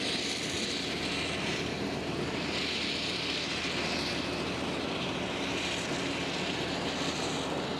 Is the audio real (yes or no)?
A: yes